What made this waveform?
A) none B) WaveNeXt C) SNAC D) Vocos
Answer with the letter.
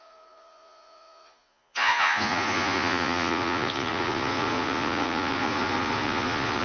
D